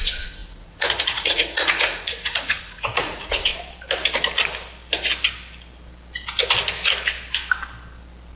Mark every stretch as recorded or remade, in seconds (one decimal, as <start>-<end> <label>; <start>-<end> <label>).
0.0-3.5 remade; 3.5-8.4 recorded